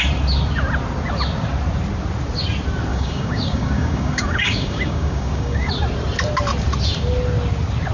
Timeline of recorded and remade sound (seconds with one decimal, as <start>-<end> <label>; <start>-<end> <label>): 0.0-2.9 recorded; 2.9-5.7 remade; 5.7-7.9 recorded

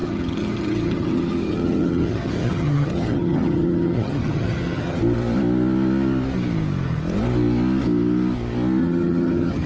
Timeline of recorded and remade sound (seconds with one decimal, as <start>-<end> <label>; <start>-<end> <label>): 0.0-5.0 remade; 5.0-8.8 recorded; 8.8-9.7 remade